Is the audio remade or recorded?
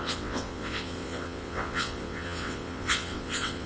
remade